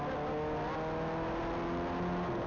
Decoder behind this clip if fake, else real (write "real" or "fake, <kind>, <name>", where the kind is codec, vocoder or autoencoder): real